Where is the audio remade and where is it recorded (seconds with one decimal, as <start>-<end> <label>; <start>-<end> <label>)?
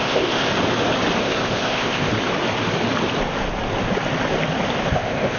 0.0-0.5 remade; 0.5-1.2 recorded; 1.2-2.1 remade; 2.1-4.9 recorded; 4.9-5.4 remade